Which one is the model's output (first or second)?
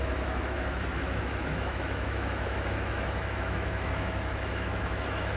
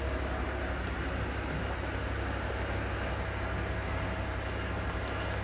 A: first